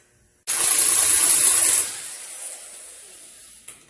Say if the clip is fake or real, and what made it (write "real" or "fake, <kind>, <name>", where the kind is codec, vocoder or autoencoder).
real